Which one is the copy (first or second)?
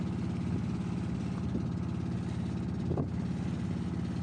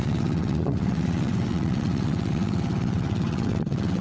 second